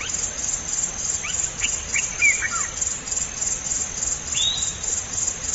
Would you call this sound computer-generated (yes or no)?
no